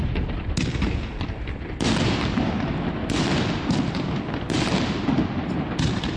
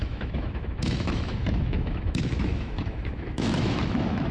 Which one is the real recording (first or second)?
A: first